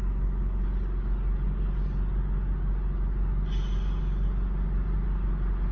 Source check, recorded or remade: recorded